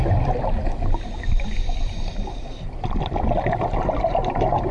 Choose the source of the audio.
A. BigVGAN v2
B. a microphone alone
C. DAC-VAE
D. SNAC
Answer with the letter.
B